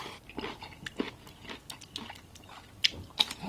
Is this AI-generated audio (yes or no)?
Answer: no